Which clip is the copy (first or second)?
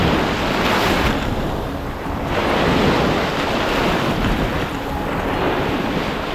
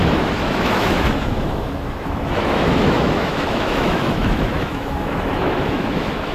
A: second